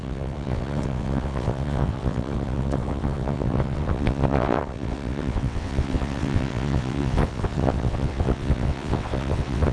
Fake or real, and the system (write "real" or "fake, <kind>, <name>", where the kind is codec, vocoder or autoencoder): fake, vocoder, WaveNeXt